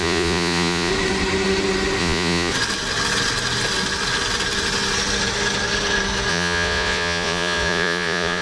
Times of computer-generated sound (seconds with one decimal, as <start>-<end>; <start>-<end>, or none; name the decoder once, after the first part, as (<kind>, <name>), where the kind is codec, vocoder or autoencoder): 0.0-0.9 (vocoder, Vocos); 2.0-2.5; 6.3-8.4